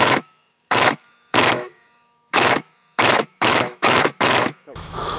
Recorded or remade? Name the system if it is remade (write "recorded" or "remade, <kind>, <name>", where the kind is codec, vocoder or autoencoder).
remade, autoencoder, DAC-VAE